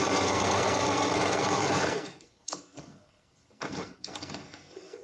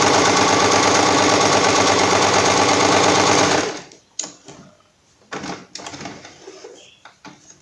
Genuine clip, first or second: second